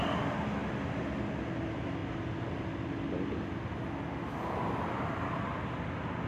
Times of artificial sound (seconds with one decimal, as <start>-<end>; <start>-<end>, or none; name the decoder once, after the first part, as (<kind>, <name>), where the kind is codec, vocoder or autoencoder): none